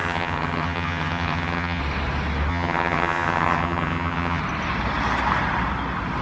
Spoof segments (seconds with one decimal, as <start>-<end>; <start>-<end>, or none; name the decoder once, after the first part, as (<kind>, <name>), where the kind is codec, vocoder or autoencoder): 0.0-1.8 (vocoder, HiFi-GAN); 2.5-4.4

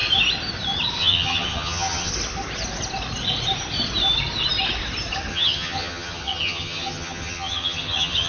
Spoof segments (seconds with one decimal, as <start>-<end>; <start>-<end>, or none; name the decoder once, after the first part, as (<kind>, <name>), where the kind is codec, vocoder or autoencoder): 1.0-2.1 (vocoder, HiFi-GAN); 5.3-8.3

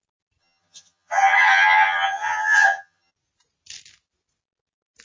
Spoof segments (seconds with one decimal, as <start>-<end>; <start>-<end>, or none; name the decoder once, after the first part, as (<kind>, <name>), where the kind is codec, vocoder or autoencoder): 0.4-3.1 (vocoder, HiFi-GAN)

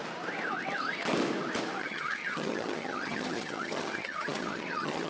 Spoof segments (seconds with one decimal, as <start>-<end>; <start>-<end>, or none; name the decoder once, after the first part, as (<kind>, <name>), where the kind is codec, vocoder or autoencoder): 1.8-5.1 (vocoder, HiFi-GAN)

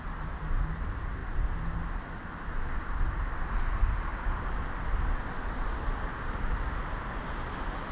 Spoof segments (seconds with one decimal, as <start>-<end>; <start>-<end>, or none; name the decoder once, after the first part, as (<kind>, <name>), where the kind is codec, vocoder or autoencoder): none

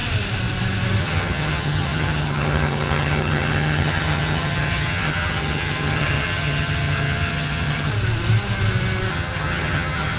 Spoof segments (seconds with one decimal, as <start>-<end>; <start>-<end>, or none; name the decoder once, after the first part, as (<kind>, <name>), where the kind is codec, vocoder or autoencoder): 1.0-7.9 (vocoder, HiFi-GAN); 9.1-10.2

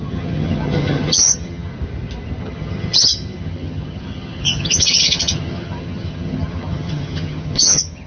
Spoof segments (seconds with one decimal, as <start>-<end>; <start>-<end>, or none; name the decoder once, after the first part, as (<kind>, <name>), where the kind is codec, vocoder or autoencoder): 0.0-1.7 (vocoder, HiFi-GAN); 2.4-8.1

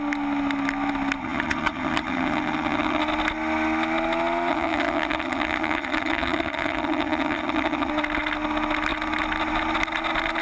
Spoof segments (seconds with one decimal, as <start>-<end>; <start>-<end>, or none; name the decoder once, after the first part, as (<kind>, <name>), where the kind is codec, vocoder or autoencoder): 1.2-3.0 (vocoder, HiFi-GAN); 4.5-7.9